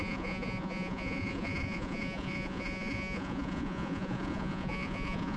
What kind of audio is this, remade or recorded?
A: remade